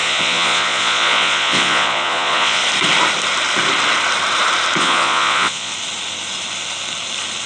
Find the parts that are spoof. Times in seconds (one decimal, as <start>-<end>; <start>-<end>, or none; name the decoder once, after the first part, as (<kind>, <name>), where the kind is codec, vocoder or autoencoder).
0.0-2.6 (vocoder, Vocos); 4.8-5.7